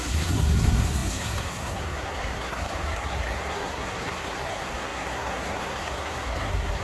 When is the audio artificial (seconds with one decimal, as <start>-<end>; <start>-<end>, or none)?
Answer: 0.0-6.8